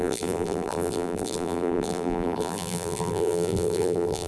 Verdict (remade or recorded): remade